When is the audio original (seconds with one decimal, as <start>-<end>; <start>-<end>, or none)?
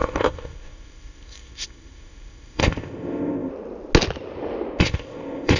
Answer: 3.5-4.8